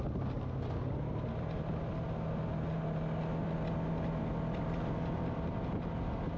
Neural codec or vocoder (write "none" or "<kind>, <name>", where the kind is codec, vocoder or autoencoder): none